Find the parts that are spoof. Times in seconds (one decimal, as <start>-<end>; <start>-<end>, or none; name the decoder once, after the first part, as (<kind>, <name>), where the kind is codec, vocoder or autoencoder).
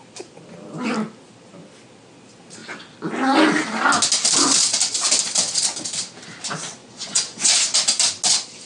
6.8-7.5 (vocoder, Vocos)